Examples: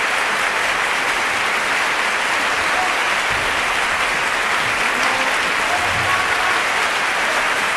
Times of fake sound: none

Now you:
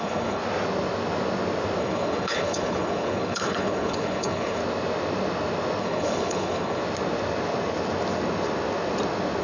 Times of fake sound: 0.0-0.4 (codec, HILCodec); 1.8-4.6; 5.8-6.8

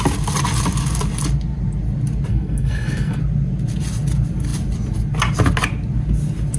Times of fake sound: 2.3-3.2 (codec, SNAC)

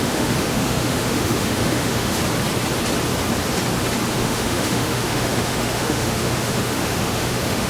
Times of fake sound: 0.0-2.2 (autoencoder, DAC-VAE); 4.1-7.7

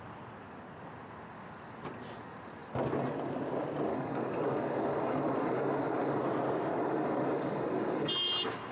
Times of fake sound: 3.9-6.2 (codec, DAC); 6.7-8.1

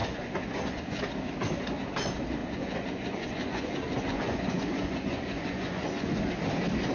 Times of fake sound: 0.0-1.0 (vocoder, Vocos); 2.4-6.2

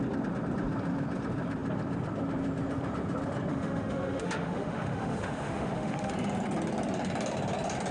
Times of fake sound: 3.5-6.1 (autoencoder, DAC-VAE)

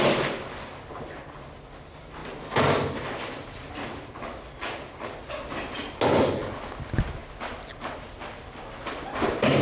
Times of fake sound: none